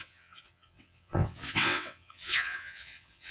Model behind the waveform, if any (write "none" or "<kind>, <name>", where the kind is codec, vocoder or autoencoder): vocoder, WaveNeXt